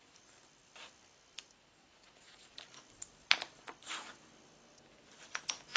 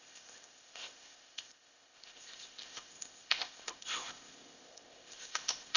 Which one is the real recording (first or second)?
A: first